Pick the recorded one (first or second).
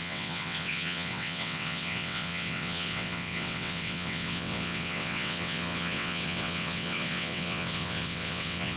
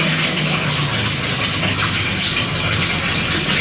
second